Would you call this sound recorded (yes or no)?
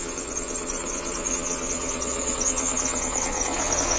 no